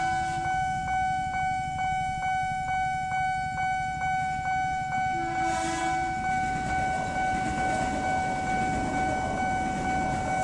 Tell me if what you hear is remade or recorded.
recorded